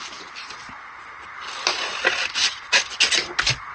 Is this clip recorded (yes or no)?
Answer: yes